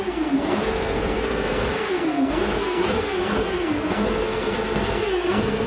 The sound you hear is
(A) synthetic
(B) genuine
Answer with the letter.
A